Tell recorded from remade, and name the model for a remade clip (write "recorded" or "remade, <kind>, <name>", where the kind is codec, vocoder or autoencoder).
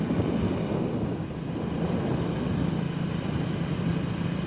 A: remade, vocoder, BigVGAN v2